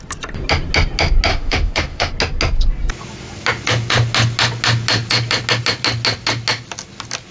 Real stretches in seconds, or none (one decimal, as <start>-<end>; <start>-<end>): 0.0-1.3; 2.1-7.3